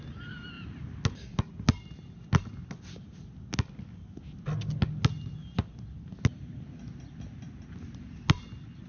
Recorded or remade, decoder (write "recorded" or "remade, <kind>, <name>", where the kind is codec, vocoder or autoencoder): recorded